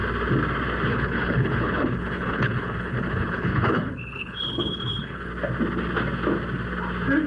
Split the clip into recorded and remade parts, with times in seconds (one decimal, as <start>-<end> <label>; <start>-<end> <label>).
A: 0.0-0.9 recorded; 0.9-5.3 remade; 5.3-7.3 recorded